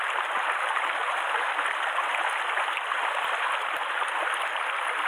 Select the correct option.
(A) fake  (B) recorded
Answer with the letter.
B